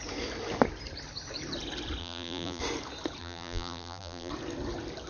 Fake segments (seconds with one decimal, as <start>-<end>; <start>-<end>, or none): 2.0-2.6; 3.2-4.3